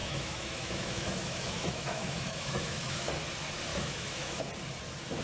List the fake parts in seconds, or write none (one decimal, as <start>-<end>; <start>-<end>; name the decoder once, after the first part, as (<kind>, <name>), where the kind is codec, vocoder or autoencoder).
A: 0.0-3.1 (autoencoder, DAC-VAE); 3.7-4.4